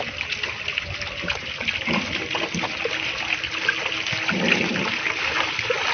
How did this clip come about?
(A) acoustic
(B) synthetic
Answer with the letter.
A